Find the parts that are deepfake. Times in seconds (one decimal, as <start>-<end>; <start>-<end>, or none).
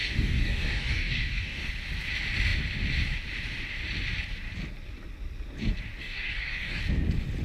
0.0-1.7; 6.0-6.8